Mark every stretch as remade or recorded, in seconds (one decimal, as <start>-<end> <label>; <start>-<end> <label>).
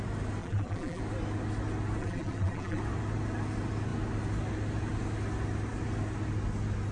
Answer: 0.0-0.4 recorded; 0.4-1.0 remade; 1.0-2.0 recorded; 2.0-2.8 remade; 2.8-6.9 recorded